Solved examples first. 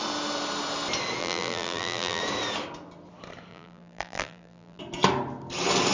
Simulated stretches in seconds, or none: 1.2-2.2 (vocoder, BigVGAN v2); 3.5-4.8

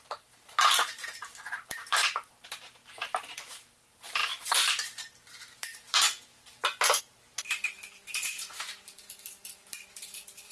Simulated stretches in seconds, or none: 0.0-2.8 (vocoder, BigVGAN v2); 3.4-10.5

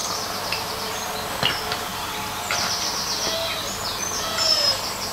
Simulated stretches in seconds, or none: none

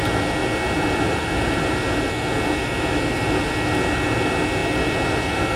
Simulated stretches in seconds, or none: none

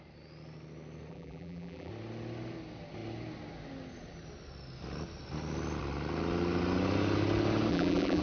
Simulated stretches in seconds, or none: 1.1-1.9 (vocoder, BigVGAN v2); 7.7-8.2

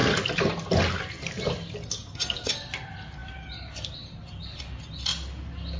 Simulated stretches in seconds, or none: none

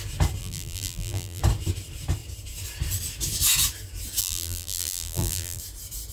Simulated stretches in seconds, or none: 0.4-1.4 (vocoder, BigVGAN v2); 4.2-5.6

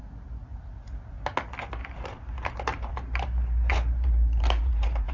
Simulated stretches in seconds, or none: 1.8-5.1 (vocoder, BigVGAN v2)